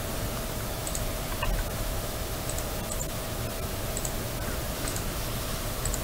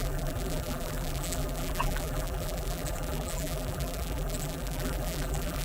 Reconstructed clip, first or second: second